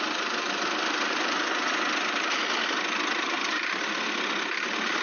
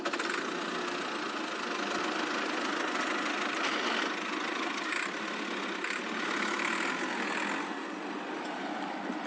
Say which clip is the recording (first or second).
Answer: second